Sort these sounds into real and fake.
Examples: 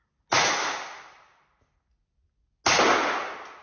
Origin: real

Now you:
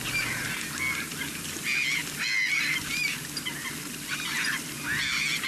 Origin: real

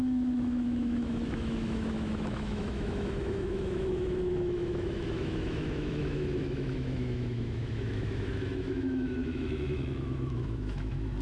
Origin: fake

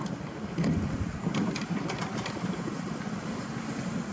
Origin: real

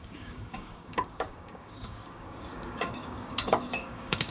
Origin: fake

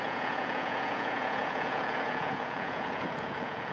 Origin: fake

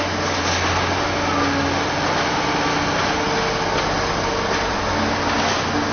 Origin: real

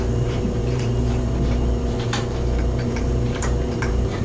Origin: fake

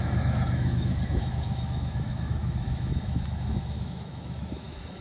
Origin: fake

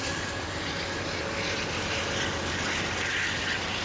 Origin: real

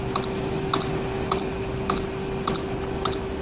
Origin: real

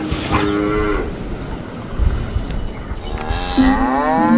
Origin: real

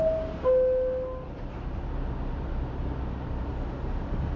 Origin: real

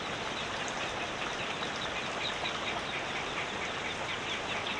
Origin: real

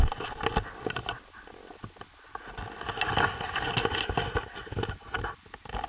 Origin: real